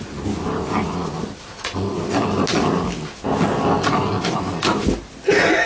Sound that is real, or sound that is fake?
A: real